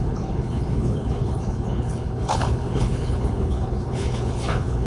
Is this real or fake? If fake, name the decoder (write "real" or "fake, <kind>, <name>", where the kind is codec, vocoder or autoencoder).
fake, codec, HILCodec